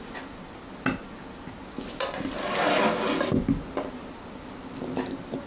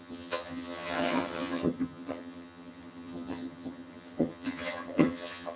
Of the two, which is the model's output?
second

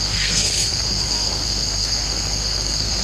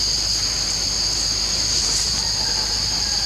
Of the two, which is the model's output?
first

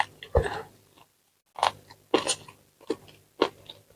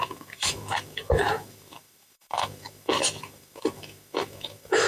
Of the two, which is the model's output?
second